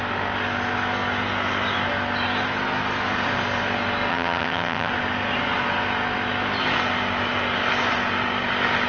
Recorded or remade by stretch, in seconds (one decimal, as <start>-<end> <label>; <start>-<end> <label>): 0.0-4.1 recorded; 4.1-4.9 remade; 4.9-8.9 recorded

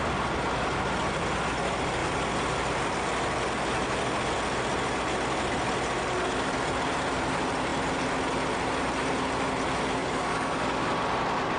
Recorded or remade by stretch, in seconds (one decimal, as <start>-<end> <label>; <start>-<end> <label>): 0.0-10.0 recorded; 10.0-10.8 remade; 10.8-11.6 recorded